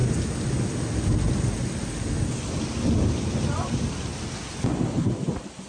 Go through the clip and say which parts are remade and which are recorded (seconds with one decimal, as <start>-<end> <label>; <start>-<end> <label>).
0.0-5.7 recorded